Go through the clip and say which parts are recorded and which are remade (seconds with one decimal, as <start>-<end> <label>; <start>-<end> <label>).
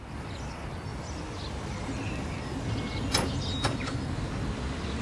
0.0-5.0 recorded